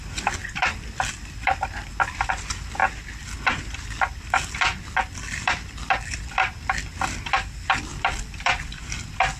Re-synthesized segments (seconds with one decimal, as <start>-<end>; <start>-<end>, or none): 0.0-9.4